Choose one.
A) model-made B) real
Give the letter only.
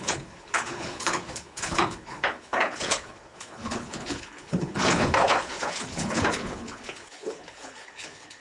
A